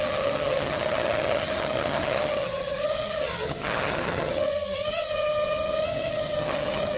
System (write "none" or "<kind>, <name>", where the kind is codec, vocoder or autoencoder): vocoder, HiFi-GAN